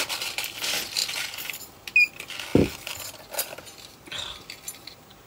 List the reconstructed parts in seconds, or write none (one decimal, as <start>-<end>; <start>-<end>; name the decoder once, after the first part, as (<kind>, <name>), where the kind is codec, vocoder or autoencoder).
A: none